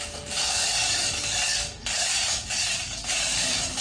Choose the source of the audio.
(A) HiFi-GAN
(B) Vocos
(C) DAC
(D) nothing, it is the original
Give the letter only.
C